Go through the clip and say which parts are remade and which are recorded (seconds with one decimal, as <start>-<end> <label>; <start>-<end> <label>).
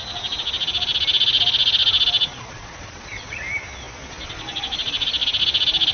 0.0-2.3 recorded; 2.3-3.4 remade; 3.4-4.2 recorded; 4.2-5.1 remade; 5.1-5.9 recorded